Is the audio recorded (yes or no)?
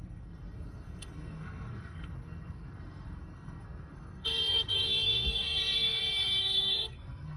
no